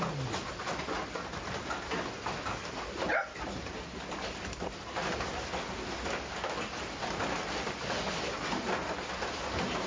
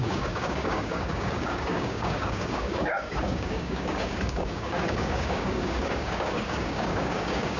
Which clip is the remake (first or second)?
second